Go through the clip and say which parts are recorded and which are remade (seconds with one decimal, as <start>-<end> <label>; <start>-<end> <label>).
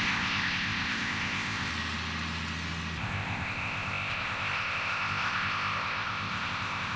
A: 0.0-1.7 remade; 1.7-3.0 recorded; 3.0-7.0 remade